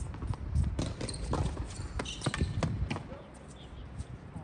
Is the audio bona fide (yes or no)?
yes